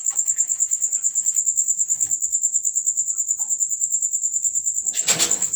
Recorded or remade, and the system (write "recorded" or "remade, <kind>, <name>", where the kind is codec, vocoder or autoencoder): remade, codec, DAC